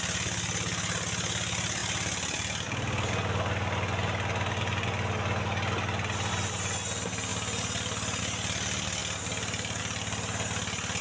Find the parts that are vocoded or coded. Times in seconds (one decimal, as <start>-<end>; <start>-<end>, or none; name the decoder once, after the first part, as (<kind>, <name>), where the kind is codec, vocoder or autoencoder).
none